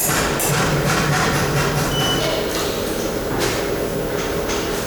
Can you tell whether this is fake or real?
real